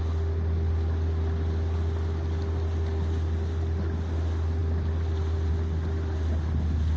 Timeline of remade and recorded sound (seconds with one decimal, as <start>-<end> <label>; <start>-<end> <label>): 0.0-7.0 recorded